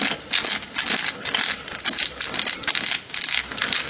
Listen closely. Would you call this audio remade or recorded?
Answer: recorded